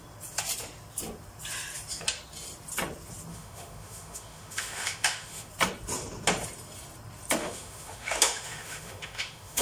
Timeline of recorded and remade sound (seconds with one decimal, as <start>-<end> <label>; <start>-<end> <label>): 0.0-3.3 recorded; 3.3-5.5 remade; 5.5-7.4 recorded; 7.4-9.6 remade